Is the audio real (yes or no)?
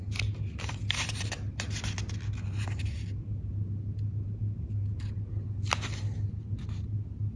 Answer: yes